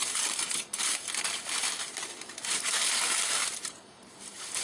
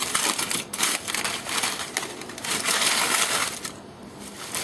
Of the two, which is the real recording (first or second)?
second